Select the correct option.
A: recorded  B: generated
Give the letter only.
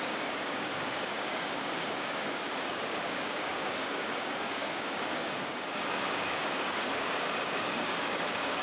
B